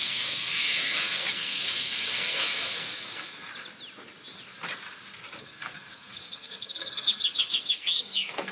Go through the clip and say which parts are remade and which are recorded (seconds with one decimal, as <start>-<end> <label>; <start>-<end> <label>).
0.0-3.5 remade; 3.5-5.4 recorded; 5.4-8.5 remade